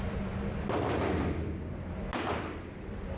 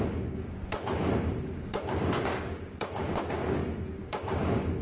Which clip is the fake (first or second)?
second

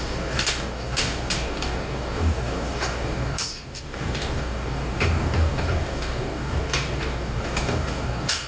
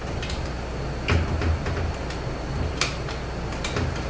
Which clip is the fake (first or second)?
first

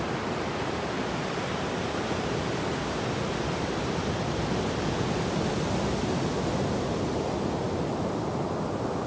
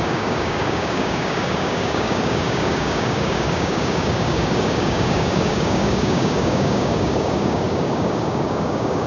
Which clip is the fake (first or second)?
second